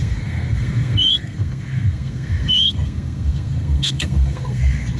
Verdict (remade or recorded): remade